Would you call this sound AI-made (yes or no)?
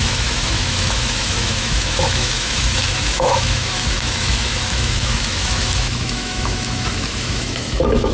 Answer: yes